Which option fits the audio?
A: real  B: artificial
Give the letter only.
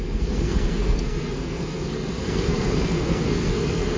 B